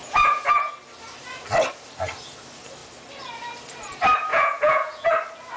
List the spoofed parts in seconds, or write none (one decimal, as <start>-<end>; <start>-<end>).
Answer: 0.0-0.7; 4.3-5.1